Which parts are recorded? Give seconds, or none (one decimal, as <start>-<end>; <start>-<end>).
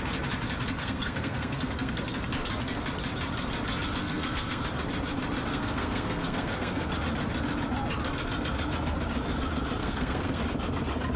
0.0-0.8; 2.0-4.0; 4.6-5.5; 6.9-9.8; 10.4-11.2